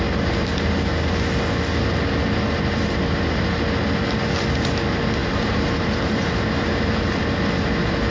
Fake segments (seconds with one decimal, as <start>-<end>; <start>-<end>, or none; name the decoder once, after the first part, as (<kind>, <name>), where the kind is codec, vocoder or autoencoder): 5.2-7.2 (vocoder, BigVGAN v2)